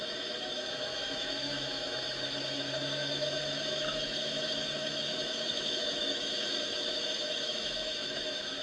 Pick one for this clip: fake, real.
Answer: fake